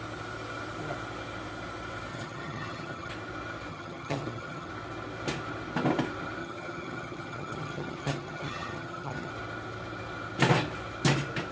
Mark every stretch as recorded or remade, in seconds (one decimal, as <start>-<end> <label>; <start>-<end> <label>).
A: 0.0-2.1 recorded; 2.1-3.1 remade; 3.1-3.7 recorded; 3.7-4.7 remade; 4.7-6.4 recorded; 6.4-9.3 remade; 9.3-11.5 recorded